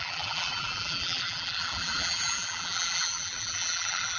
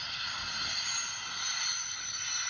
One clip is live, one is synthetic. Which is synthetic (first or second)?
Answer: first